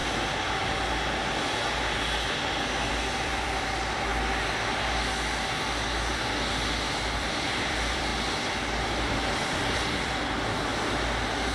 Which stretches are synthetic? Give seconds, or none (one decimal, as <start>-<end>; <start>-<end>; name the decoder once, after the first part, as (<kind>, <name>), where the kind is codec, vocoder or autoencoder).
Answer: 2.9-4.1 (vocoder, BigVGAN v2); 7.0-8.1; 8.8-10.7